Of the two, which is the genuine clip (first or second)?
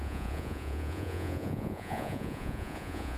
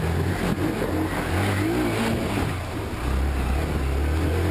second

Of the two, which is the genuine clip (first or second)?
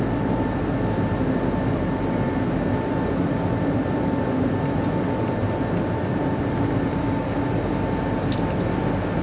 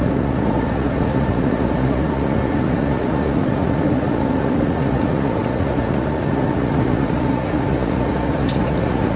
first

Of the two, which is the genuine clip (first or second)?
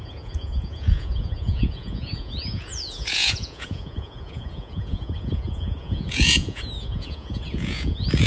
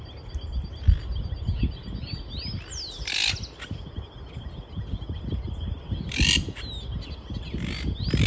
second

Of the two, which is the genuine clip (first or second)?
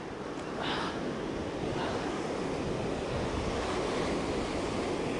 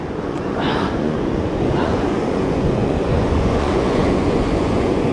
first